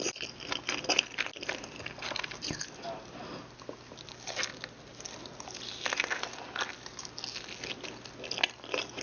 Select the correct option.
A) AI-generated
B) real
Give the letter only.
B